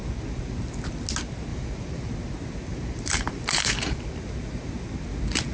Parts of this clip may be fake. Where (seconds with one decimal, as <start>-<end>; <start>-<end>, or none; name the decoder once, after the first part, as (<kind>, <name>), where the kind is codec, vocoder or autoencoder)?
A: 1.5-2.1 (vocoder, BigVGAN v2); 2.7-4.1